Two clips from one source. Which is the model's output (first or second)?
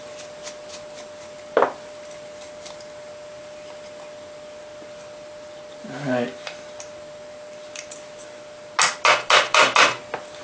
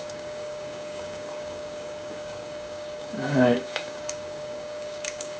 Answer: second